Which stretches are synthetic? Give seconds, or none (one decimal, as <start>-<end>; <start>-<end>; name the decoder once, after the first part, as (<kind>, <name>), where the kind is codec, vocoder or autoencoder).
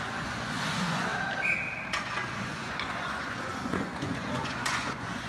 0.0-1.1 (vocoder, Vocos); 1.9-5.3